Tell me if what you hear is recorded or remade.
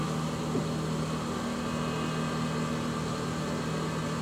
recorded